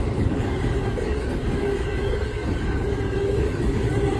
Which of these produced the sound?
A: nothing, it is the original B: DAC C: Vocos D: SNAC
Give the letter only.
B